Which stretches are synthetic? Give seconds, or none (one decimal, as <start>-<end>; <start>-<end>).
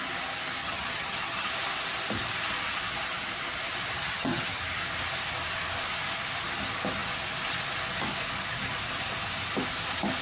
0.6-1.5; 4.0-4.6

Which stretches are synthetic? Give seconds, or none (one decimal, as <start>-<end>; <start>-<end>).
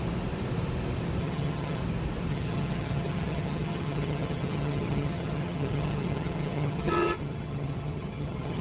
1.2-1.8; 2.3-8.6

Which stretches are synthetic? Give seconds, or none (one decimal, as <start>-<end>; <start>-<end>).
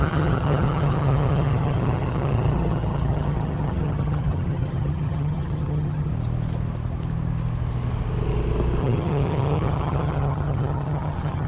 0.0-6.1; 8.8-11.5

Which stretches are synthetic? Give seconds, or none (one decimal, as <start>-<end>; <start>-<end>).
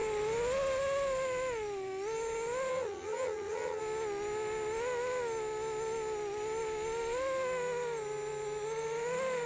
2.7-3.8